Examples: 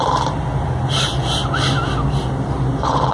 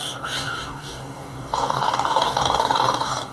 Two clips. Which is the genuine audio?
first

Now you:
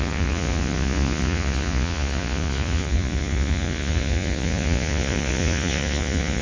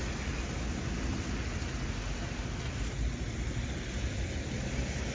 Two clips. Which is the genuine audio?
second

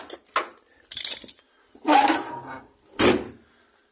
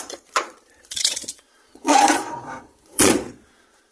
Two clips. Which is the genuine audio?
first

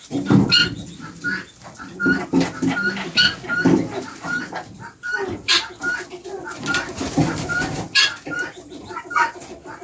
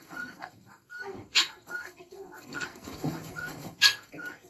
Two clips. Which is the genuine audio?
first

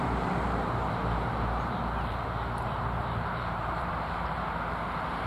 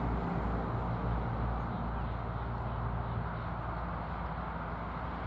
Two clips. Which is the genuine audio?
second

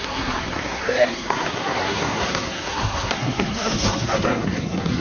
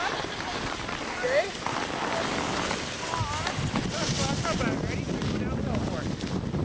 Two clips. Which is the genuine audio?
second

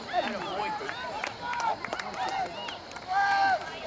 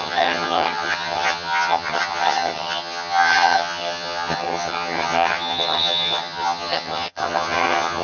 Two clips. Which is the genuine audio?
first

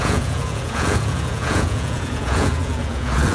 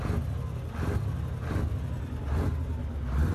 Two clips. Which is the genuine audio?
second